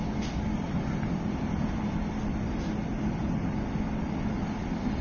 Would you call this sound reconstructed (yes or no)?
no